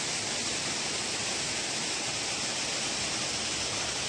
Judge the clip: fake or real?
real